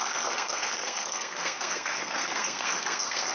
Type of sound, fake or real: fake